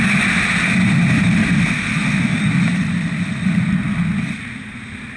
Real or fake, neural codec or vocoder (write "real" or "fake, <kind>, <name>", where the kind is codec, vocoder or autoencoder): real